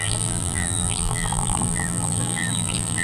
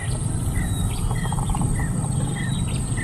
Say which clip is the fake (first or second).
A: first